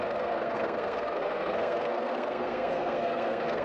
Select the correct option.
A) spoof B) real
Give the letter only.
A